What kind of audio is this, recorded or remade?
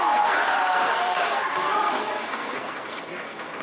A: remade